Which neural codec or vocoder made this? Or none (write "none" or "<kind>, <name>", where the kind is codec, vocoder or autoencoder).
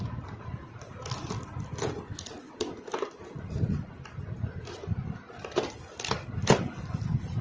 none